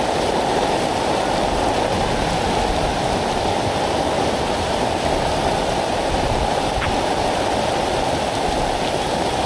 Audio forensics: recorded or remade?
recorded